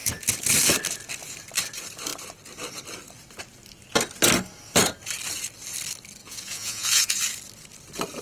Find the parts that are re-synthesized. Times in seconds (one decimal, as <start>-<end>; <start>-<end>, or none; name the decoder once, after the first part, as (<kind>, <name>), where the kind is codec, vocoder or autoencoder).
6.2-7.2 (vocoder, Vocos)